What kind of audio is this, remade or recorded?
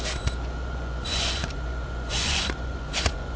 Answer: remade